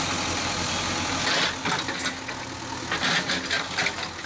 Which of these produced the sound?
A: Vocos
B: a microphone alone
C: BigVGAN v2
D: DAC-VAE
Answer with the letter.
B